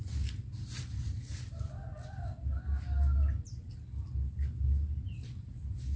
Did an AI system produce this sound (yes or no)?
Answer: no